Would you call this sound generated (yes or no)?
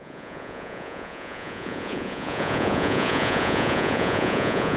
yes